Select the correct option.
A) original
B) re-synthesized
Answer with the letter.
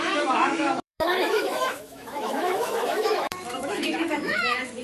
B